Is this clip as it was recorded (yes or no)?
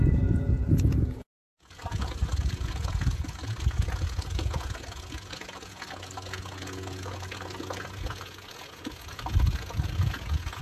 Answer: no